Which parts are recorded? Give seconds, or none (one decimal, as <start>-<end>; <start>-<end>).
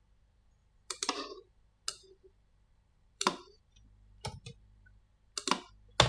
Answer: 0.0-0.6; 1.5-1.9; 5.0-6.1